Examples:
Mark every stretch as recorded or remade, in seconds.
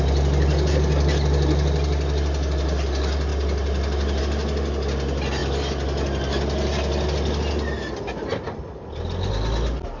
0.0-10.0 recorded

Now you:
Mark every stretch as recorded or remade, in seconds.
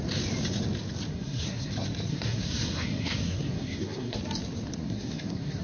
0.0-1.1 recorded; 1.1-1.7 remade; 1.7-2.1 recorded; 2.1-4.2 remade; 4.2-4.8 recorded; 4.8-5.6 remade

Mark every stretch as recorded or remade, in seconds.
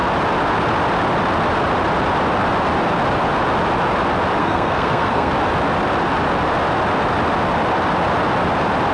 0.0-4.4 recorded; 4.4-5.3 remade; 5.3-8.9 recorded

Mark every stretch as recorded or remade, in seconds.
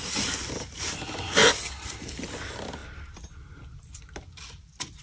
0.0-5.0 recorded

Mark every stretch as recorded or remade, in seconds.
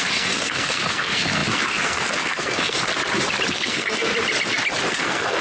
0.0-2.9 remade; 2.9-3.5 recorded; 3.5-4.1 remade; 4.1-4.9 recorded; 4.9-5.4 remade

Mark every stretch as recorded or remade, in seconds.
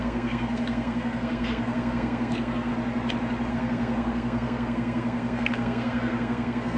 0.0-2.7 remade; 2.7-3.5 recorded; 3.5-6.8 remade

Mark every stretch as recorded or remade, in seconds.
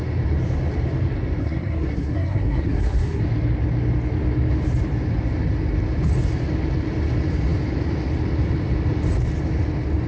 0.0-1.4 recorded; 1.4-3.2 remade; 3.2-10.1 recorded